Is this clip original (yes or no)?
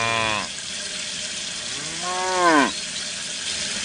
yes